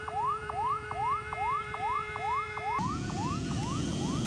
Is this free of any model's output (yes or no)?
no